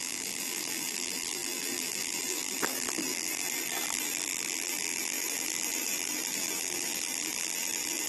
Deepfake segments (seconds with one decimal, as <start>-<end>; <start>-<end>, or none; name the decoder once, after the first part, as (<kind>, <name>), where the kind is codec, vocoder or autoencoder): 0.0-8.1 (vocoder, BigVGAN v2)